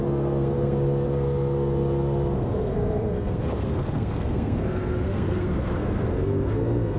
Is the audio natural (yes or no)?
no